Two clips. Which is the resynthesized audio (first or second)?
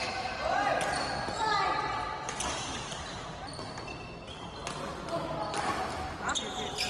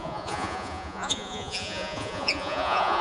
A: second